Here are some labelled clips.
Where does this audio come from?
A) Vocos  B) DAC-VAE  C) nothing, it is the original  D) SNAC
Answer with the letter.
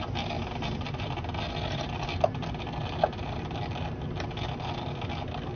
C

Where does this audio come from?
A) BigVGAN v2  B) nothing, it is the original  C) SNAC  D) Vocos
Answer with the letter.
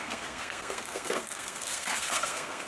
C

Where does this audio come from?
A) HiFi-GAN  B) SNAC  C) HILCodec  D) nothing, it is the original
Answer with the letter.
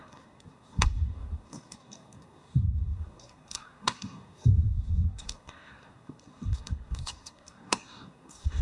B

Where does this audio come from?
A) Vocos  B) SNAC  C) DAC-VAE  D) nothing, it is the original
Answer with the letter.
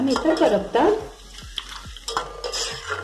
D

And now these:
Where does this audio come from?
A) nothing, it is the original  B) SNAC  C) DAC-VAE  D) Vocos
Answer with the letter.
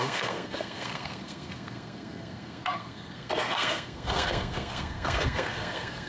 B